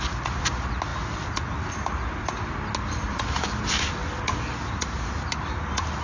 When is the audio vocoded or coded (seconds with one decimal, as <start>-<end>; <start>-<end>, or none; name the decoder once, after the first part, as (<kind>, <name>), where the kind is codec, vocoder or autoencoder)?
4.5-6.0 (vocoder, BigVGAN v2)